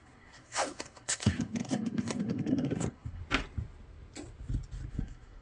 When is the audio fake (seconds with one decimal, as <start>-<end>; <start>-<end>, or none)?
0.0-3.2; 4.9-5.4